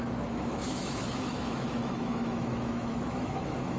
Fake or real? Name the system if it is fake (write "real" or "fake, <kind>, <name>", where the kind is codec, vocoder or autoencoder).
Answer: fake, autoencoder, DAC-VAE